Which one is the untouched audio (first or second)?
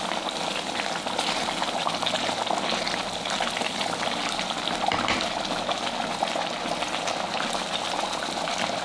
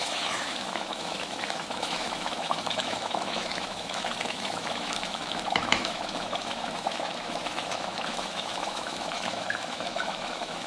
first